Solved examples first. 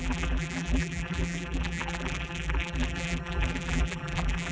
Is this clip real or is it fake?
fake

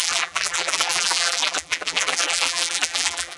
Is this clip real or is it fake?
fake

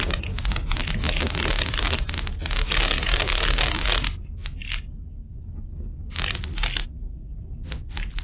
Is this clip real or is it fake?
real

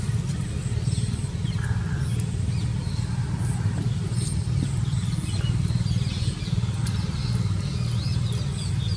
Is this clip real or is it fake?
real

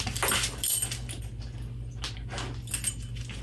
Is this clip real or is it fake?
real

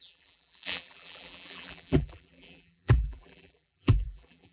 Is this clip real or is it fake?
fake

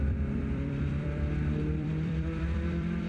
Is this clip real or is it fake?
fake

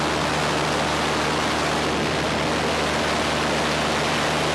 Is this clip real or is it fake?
real